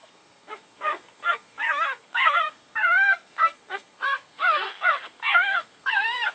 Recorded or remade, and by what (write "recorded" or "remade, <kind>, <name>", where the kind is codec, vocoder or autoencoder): remade, codec, SNAC